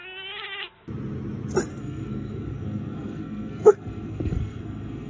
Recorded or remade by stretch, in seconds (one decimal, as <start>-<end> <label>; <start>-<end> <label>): 0.0-1.7 recorded; 1.7-5.1 remade